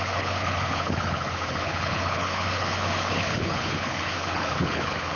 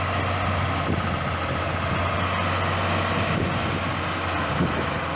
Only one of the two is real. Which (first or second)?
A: second